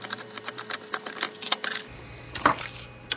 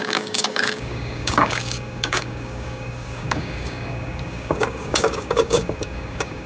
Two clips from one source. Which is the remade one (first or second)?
second